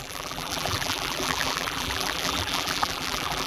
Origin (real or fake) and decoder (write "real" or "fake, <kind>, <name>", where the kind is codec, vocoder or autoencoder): fake, vocoder, BigVGAN v2